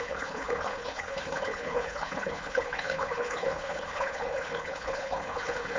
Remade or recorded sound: remade